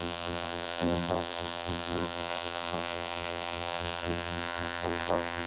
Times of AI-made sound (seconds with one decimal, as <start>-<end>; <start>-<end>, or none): 0.0-5.5